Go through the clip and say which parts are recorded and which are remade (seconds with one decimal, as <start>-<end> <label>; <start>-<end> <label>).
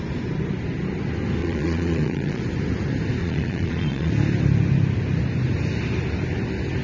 0.0-1.4 recorded; 1.4-2.4 remade; 2.4-3.2 recorded; 3.2-4.1 remade; 4.1-6.8 recorded